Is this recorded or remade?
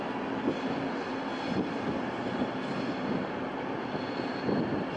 recorded